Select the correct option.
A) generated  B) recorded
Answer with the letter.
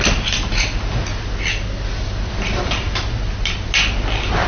B